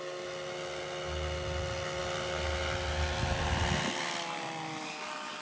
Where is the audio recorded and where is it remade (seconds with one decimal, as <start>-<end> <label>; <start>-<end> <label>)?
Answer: 0.0-5.4 recorded